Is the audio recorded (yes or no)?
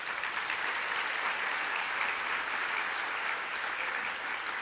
yes